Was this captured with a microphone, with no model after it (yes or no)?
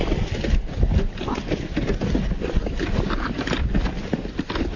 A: yes